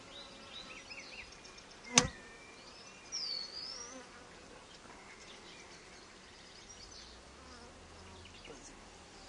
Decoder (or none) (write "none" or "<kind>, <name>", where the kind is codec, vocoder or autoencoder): none